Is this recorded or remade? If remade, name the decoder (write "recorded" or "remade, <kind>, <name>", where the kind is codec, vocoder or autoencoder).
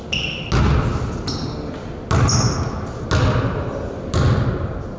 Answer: recorded